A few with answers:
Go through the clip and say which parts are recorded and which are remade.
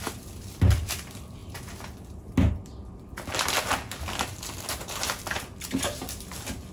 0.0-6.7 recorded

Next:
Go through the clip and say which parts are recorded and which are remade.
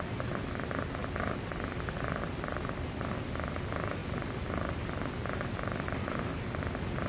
0.0-7.1 recorded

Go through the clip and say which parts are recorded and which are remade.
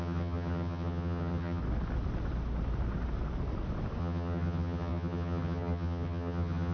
0.0-1.6 remade; 1.6-4.0 recorded; 4.0-6.7 remade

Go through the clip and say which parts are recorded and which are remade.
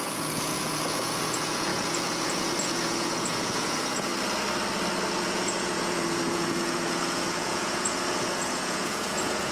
0.0-4.1 remade; 4.1-5.2 recorded; 5.2-9.5 remade